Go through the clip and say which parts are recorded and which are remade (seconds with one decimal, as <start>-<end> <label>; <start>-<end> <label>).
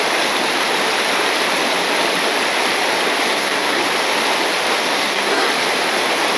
0.0-3.3 recorded; 3.3-3.8 remade; 3.8-4.8 recorded; 4.8-5.5 remade; 5.5-6.4 recorded